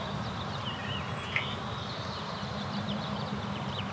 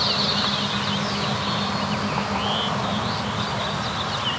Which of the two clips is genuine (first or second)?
second